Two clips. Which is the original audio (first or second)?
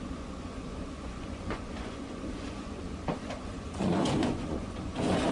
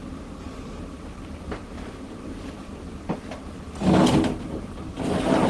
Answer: second